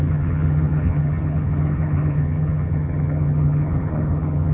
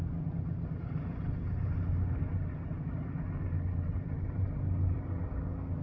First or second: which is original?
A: second